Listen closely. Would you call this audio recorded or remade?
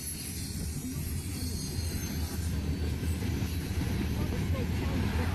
recorded